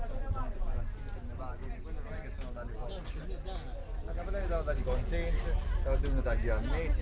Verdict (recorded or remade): recorded